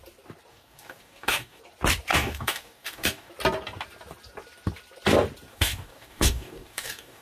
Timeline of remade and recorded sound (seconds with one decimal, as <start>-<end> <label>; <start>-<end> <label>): 0.0-0.5 recorded; 0.5-1.6 remade; 1.6-2.1 recorded; 2.1-3.3 remade; 3.3-5.5 recorded; 5.5-7.2 remade